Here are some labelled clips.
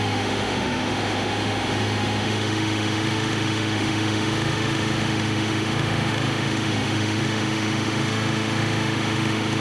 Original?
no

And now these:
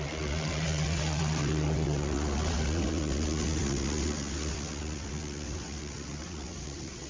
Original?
no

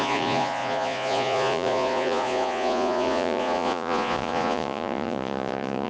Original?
no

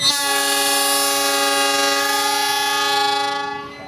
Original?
yes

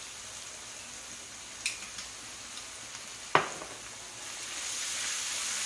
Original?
yes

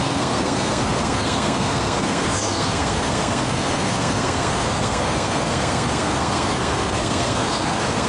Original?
no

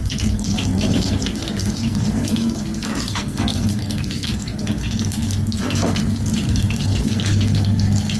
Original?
no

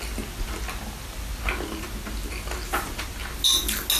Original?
yes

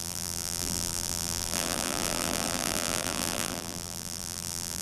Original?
no